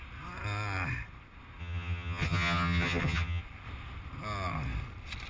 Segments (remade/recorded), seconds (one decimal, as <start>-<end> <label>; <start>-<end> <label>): 0.0-1.6 recorded; 1.6-3.4 remade; 3.4-5.3 recorded